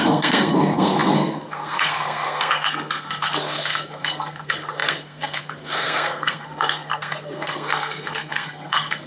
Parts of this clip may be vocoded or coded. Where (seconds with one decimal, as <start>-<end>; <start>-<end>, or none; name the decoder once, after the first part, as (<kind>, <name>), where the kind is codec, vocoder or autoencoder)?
0.0-9.1 (codec, SNAC)